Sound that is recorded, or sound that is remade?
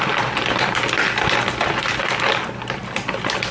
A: recorded